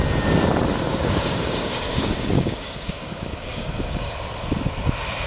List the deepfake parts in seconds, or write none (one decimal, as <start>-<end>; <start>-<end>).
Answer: 0.9-4.1